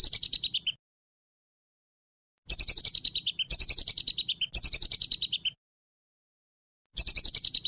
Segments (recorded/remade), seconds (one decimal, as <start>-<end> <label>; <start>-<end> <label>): 0.0-7.7 recorded

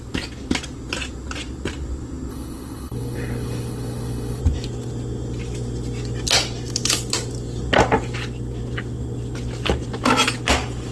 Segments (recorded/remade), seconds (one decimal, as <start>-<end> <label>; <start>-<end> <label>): 0.0-2.3 recorded; 2.3-4.4 remade; 4.4-10.9 recorded

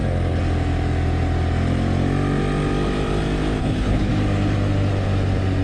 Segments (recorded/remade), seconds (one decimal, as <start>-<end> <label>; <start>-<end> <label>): 0.0-3.6 recorded; 3.6-4.1 remade; 4.1-5.6 recorded

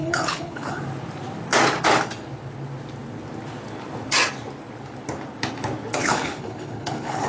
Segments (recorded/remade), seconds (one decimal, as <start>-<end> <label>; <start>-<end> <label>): 0.0-0.8 remade; 0.8-6.0 recorded; 6.0-7.3 remade